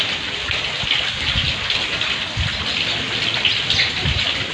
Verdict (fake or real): real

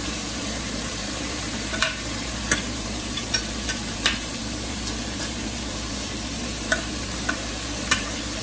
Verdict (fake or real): fake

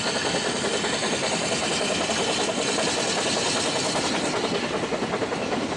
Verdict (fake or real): real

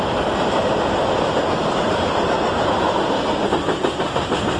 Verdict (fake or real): fake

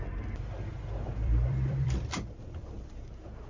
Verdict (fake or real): fake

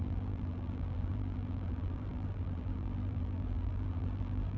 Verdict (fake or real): fake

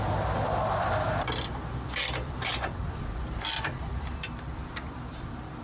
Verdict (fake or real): fake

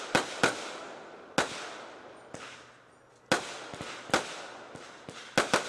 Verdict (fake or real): real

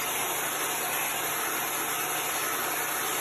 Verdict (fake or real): real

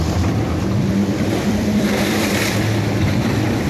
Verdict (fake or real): fake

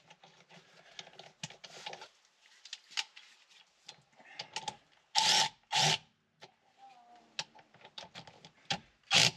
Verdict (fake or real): real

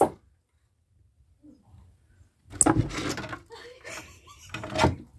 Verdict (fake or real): real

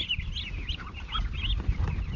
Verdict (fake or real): real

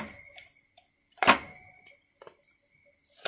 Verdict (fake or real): fake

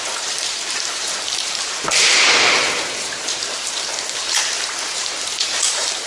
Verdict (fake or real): fake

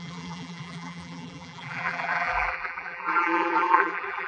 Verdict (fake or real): fake